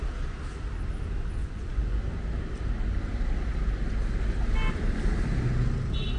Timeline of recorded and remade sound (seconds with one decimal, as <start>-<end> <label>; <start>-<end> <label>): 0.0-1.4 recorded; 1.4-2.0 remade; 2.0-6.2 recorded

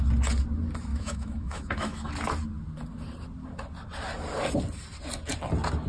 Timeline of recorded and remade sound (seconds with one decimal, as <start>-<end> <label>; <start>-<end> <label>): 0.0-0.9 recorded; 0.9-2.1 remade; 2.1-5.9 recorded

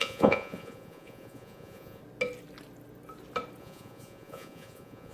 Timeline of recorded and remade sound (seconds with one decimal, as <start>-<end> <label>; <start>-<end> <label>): 0.0-2.0 remade; 2.0-3.6 recorded; 3.6-5.1 remade

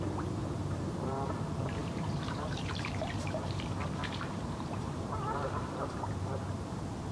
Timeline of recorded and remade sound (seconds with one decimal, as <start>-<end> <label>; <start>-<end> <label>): 0.0-0.4 recorded; 0.4-1.3 remade; 1.3-1.8 recorded; 1.8-6.1 remade; 6.1-7.1 recorded

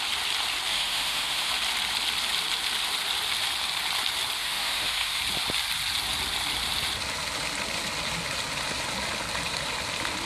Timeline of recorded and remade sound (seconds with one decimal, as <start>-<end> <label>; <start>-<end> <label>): 0.0-0.7 recorded; 0.7-1.5 remade; 1.5-4.4 recorded; 4.4-5.2 remade; 5.2-10.3 recorded

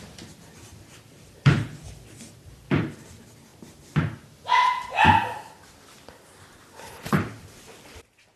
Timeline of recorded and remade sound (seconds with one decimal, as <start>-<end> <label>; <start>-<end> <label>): 0.0-3.5 remade; 3.5-5.9 recorded; 5.9-8.4 remade

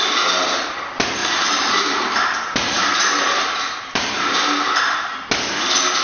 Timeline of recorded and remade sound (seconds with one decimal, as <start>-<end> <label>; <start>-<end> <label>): 0.0-1.2 recorded; 1.2-4.8 remade; 4.8-6.0 recorded